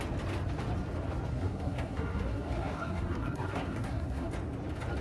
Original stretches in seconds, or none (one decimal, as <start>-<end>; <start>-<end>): 0.0-1.3; 4.3-5.0